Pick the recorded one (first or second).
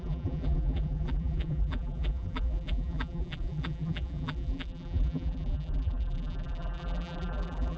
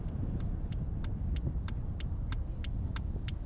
second